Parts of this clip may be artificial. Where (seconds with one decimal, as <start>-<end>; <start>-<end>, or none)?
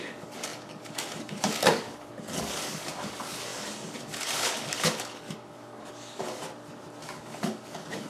0.0-6.4; 7.0-8.1